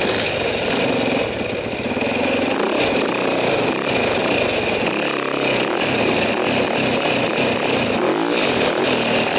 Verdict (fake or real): real